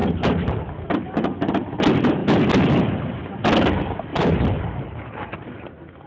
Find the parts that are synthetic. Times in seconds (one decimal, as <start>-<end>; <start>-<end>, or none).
0.0-0.7; 4.1-5.0